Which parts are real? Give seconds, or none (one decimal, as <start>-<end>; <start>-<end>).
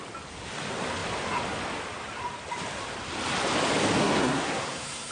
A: 0.0-4.0